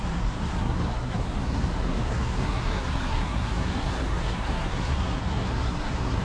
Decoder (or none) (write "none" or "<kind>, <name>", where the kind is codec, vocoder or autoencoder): codec, SNAC